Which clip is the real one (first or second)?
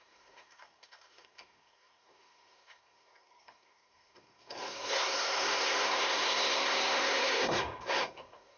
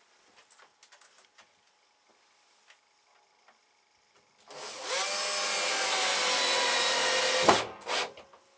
second